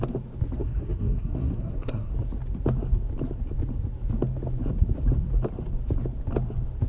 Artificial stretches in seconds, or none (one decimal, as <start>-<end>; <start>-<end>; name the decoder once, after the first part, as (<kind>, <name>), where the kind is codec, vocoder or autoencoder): 0.6-2.1 (codec, SNAC)